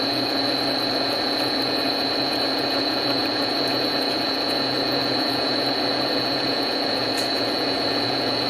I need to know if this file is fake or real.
fake